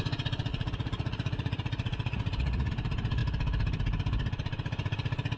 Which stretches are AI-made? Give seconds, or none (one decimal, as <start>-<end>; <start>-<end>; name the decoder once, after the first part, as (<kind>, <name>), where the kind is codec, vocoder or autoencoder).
0.5-2.7 (vocoder, Vocos)